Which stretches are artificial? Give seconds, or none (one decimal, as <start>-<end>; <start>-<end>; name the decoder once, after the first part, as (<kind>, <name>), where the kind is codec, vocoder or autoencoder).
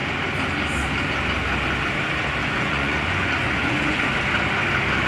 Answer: 2.4-4.0 (vocoder, Vocos)